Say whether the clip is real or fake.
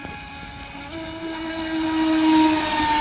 real